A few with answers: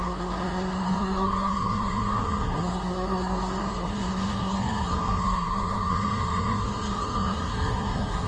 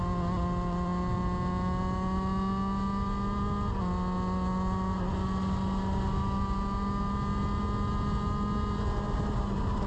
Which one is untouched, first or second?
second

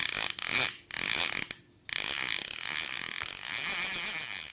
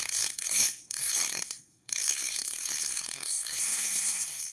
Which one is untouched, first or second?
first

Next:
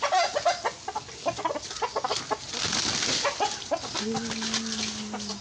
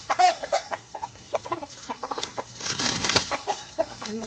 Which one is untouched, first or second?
first